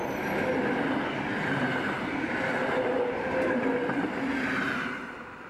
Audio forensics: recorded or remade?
recorded